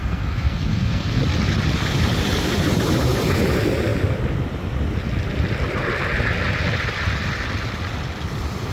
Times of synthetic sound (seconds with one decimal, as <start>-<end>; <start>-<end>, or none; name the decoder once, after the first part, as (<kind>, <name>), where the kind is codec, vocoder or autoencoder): 0.0-1.2 (codec, SNAC)